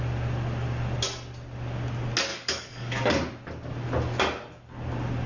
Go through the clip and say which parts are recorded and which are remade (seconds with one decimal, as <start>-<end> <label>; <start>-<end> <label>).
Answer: 0.0-2.3 recorded; 2.3-3.1 remade; 3.1-5.3 recorded